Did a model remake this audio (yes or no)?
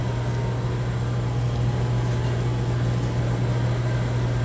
no